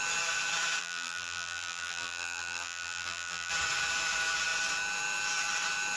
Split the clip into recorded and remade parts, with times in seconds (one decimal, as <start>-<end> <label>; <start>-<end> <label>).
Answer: 0.0-0.8 recorded; 0.8-3.5 remade; 3.5-6.0 recorded

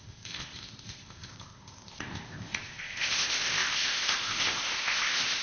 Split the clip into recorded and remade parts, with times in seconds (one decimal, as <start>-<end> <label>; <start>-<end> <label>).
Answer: 0.0-5.4 remade

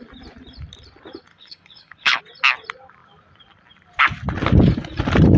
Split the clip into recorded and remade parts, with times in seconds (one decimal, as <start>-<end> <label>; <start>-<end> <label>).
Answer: 0.0-1.3 recorded; 1.3-2.2 remade; 2.2-5.4 recorded

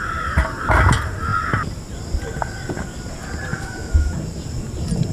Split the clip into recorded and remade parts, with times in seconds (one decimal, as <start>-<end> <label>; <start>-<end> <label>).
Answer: 0.0-3.5 recorded; 3.5-4.1 remade; 4.1-5.1 recorded

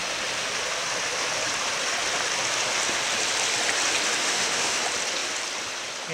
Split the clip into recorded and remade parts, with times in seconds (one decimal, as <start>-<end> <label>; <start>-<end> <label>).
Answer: 0.0-4.2 recorded; 4.2-4.8 remade; 4.8-6.1 recorded

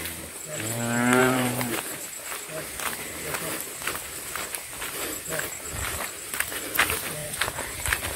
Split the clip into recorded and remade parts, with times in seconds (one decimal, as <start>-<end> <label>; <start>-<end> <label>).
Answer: 0.0-1.2 recorded; 1.2-2.1 remade; 2.1-8.2 recorded

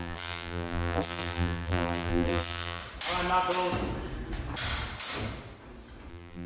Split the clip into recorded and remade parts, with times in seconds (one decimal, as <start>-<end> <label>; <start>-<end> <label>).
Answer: 0.0-2.8 remade; 2.8-6.1 recorded; 6.1-6.5 remade